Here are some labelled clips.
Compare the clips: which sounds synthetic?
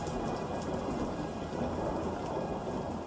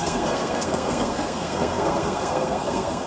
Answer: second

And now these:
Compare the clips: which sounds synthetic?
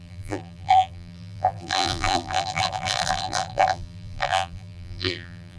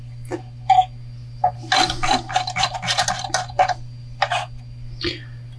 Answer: first